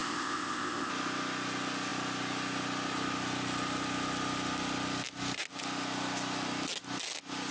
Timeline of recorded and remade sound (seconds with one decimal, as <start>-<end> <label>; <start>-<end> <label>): 0.0-0.9 remade; 0.9-7.5 recorded